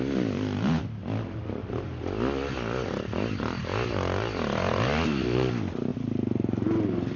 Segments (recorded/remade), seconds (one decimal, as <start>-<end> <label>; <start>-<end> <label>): 0.0-7.2 recorded